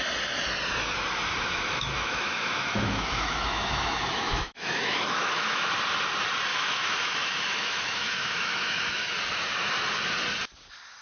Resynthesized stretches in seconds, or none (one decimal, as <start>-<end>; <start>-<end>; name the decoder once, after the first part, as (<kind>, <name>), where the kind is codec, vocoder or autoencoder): 1.3-5.7 (autoencoder, DAC-VAE); 6.5-9.1